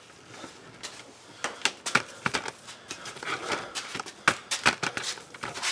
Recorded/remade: recorded